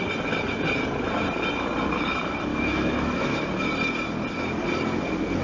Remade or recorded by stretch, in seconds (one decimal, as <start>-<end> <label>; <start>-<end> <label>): 0.0-2.5 recorded; 2.5-3.5 remade; 3.5-5.4 recorded